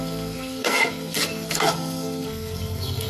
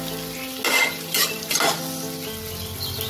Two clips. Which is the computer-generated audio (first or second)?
first